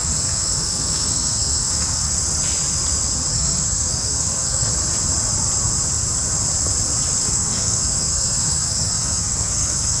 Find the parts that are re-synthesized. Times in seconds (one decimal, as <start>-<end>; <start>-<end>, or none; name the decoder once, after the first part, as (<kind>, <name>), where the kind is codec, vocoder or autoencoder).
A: 0.0-2.1 (codec, SNAC); 3.3-4.7; 7.2-10.0

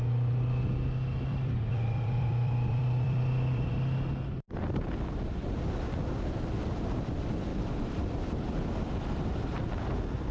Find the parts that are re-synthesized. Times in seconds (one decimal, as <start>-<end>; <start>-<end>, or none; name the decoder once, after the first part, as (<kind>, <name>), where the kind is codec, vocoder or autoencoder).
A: 1.3-3.7 (vocoder, BigVGAN v2); 7.5-8.9

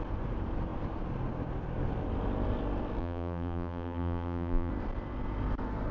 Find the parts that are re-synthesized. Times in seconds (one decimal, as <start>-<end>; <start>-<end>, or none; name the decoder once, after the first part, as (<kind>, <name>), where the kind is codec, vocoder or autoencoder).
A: 3.0-4.7 (vocoder, BigVGAN v2)

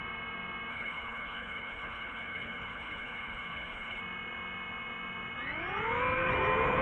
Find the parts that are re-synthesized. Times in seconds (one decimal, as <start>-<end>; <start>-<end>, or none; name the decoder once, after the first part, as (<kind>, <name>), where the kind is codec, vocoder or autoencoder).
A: 0.7-4.0 (codec, HILCodec)

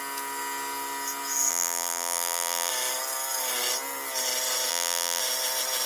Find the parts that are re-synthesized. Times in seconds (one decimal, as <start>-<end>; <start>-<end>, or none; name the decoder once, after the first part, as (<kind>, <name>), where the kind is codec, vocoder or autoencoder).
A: 1.5-2.7 (vocoder, BigVGAN v2); 4.7-5.2

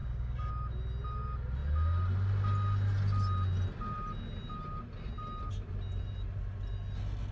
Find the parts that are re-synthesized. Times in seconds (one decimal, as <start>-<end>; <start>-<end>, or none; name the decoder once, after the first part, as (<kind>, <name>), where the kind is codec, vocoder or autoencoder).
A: 0.0-0.5 (codec, DAC)

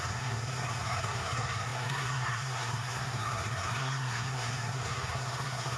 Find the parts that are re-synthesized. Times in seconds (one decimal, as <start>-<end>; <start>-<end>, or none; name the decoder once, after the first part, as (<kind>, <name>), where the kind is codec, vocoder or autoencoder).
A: 0.0-5.8 (codec, SNAC)